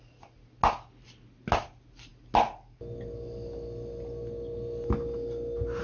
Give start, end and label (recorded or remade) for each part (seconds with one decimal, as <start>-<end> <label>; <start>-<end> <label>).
0.0-5.8 recorded